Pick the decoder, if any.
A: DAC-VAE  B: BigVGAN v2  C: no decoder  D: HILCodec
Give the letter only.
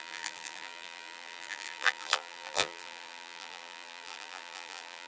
B